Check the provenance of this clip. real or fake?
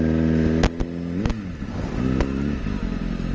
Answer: real